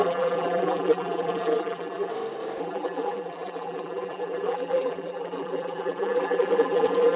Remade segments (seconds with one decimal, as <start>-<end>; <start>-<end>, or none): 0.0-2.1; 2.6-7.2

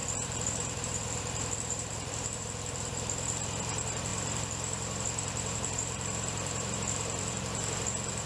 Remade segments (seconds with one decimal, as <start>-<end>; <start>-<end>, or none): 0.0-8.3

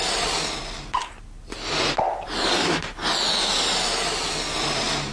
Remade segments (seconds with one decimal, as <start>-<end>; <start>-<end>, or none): none

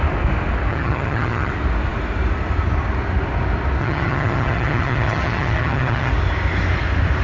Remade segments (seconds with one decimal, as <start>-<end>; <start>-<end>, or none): 0.7-1.5; 3.8-6.1

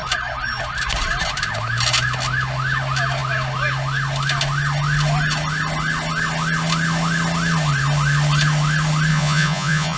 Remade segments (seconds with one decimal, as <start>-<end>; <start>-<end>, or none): 9.1-10.0